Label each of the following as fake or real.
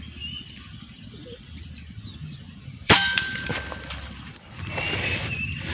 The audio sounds fake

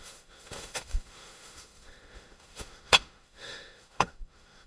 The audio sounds fake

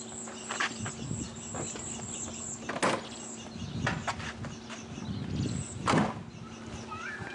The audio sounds real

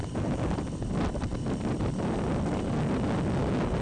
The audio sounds real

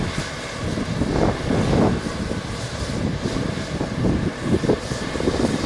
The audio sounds real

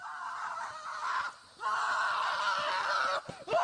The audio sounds real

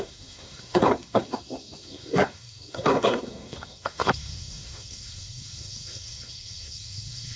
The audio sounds fake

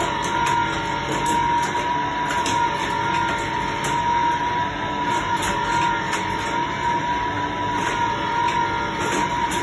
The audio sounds real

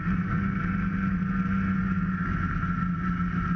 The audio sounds real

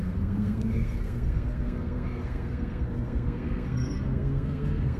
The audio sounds fake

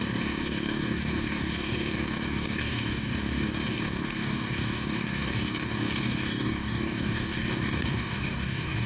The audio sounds fake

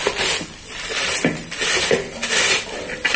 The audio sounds real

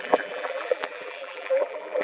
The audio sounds fake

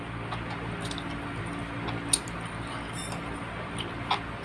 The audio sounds real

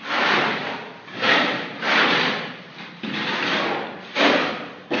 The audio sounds fake